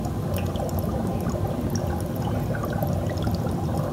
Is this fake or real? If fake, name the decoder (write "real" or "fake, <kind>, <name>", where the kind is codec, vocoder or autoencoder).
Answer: real